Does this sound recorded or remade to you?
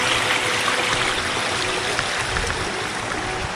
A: recorded